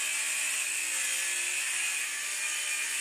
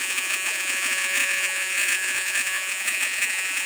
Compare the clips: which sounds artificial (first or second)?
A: second